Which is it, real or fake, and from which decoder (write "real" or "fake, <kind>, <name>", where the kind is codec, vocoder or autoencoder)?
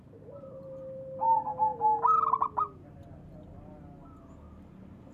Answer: real